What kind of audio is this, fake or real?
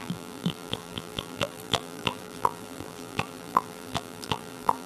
fake